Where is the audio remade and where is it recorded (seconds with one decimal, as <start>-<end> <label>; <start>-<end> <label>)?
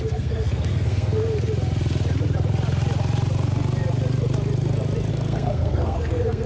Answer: 0.0-1.2 remade; 1.2-5.1 recorded; 5.1-6.5 remade